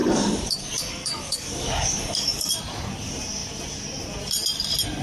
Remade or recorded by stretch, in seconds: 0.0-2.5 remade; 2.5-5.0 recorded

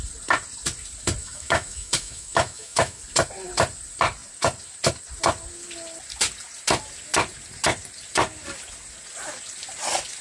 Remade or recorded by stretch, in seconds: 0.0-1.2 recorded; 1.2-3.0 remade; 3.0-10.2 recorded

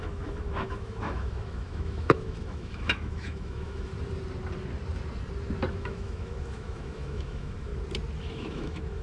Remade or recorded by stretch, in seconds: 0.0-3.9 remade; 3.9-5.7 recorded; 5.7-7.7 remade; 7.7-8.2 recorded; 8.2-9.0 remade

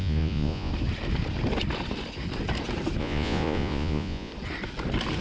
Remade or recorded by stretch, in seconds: 0.0-0.7 remade; 0.7-3.0 recorded; 3.0-4.3 remade; 4.3-5.2 recorded

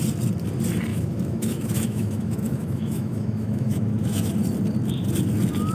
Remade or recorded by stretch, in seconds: 0.0-0.9 recorded; 0.9-4.3 remade; 4.3-5.7 recorded

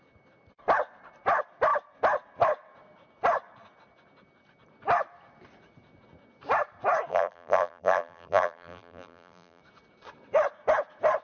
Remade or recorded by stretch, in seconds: 0.0-7.1 recorded; 7.1-9.6 remade; 9.6-11.2 recorded

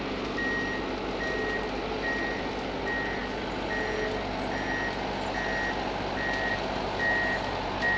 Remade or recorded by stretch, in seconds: 0.0-8.0 recorded